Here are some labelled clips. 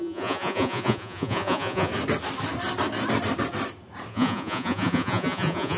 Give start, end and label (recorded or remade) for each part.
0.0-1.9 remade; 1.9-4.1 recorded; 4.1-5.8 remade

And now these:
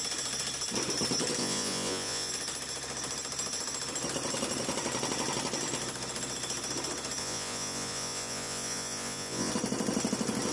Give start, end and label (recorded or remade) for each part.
0.0-1.4 recorded; 1.4-2.3 remade; 2.3-7.2 recorded; 7.2-9.5 remade; 9.5-10.5 recorded

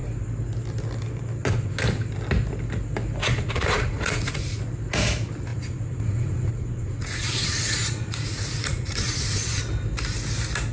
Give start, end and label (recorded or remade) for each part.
0.0-3.2 recorded; 3.2-4.6 remade; 4.6-5.5 recorded; 5.5-9.6 remade; 9.6-10.7 recorded